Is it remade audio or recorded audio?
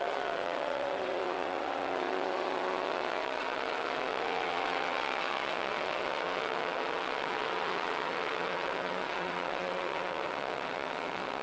remade